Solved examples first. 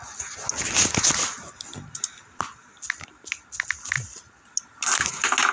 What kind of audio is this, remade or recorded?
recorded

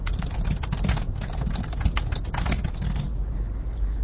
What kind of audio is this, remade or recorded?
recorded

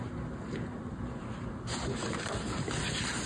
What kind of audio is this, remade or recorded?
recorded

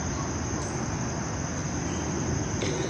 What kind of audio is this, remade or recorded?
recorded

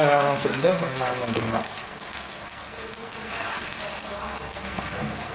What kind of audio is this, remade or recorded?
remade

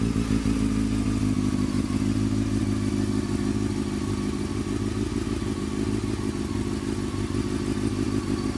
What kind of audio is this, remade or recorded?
recorded